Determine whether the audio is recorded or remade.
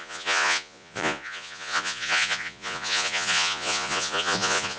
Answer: remade